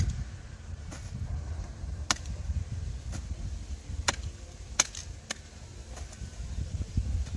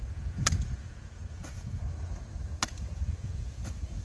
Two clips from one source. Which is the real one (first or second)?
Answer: first